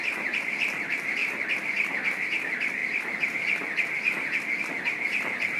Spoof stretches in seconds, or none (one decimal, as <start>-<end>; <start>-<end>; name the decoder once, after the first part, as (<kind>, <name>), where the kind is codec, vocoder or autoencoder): none